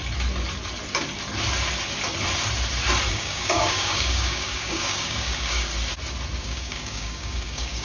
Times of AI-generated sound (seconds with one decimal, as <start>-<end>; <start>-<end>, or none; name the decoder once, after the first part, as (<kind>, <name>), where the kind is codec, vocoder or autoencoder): 3.1-5.7 (codec, DAC); 6.4-7.8